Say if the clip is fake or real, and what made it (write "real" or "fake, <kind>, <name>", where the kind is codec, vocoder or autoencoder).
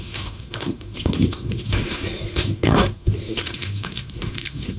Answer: fake, codec, SNAC